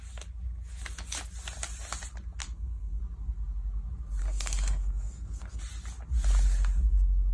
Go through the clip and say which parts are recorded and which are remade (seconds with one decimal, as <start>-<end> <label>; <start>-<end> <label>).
0.0-2.4 recorded; 2.4-3.0 remade; 3.0-4.2 recorded; 4.2-5.6 remade; 5.6-7.3 recorded